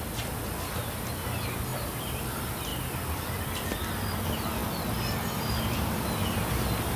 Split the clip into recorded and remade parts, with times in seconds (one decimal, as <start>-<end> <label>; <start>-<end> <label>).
0.0-1.7 recorded; 1.7-2.2 remade; 2.2-2.7 recorded; 2.7-3.4 remade; 3.4-7.0 recorded